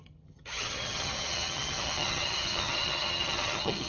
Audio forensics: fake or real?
fake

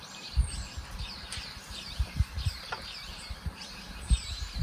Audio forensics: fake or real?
fake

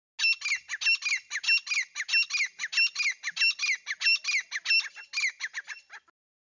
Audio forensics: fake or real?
real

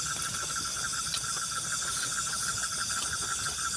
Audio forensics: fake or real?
real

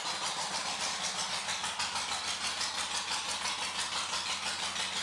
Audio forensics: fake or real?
real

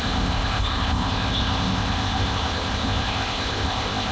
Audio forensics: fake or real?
fake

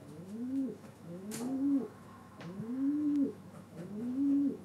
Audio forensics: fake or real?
fake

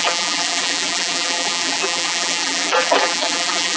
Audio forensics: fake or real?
fake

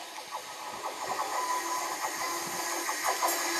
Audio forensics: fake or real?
real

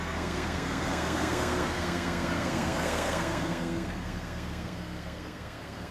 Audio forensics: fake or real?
fake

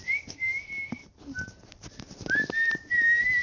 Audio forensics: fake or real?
real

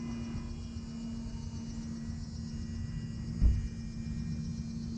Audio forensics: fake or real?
real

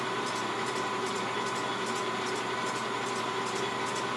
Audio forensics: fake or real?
real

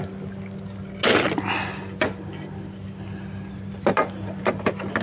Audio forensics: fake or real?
real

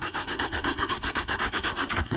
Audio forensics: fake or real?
fake